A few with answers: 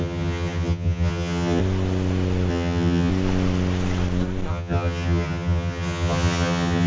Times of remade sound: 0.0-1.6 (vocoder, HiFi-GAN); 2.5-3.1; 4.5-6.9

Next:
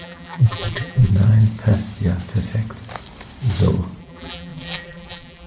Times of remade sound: 0.0-1.1 (vocoder, BigVGAN v2); 4.0-5.5

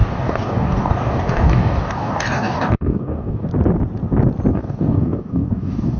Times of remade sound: 0.0-3.5 (codec, DAC); 4.5-6.0

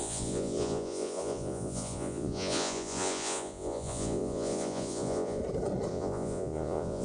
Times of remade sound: 0.0-5.4 (vocoder, Vocos); 5.9-7.0

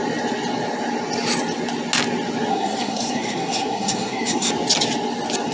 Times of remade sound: 2.5-4.5 (codec, SNAC)

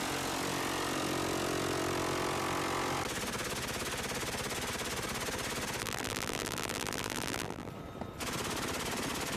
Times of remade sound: 5.8-7.7 (vocoder, BigVGAN v2)

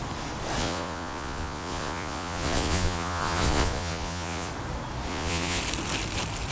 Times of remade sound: 0.6-4.5 (vocoder, Vocos); 5.1-5.6